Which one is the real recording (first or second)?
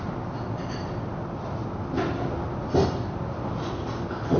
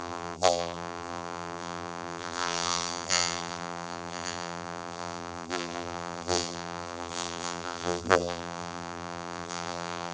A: first